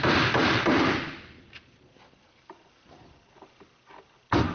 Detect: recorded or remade recorded